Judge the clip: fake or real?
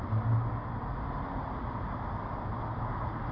real